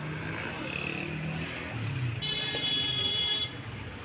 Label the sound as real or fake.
real